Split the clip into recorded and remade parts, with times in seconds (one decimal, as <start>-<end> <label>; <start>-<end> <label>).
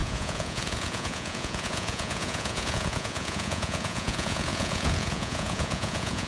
0.0-6.3 remade